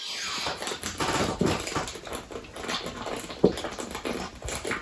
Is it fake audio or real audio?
fake